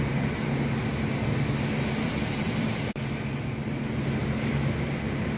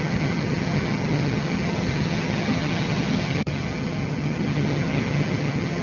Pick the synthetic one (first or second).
second